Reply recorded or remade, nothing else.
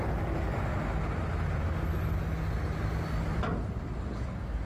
recorded